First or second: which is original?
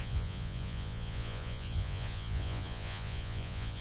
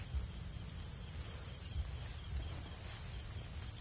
second